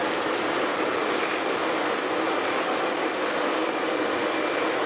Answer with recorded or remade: recorded